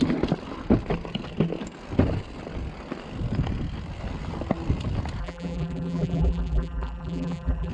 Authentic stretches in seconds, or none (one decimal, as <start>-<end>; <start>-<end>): 0.0-5.2